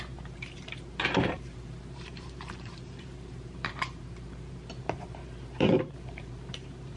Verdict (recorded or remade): remade